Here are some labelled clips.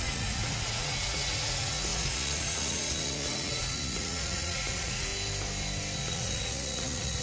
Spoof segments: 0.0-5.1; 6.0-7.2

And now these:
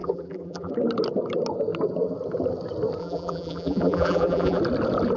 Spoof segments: 0.0-0.7; 3.0-4.6

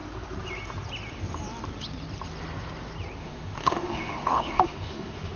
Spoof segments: 3.2-5.4